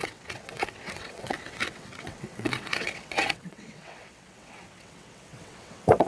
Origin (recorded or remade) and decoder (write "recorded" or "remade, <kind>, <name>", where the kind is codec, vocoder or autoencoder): remade, vocoder, WaveNeXt